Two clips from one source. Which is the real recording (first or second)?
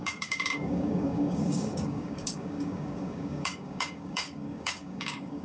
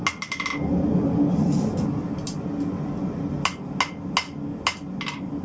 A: second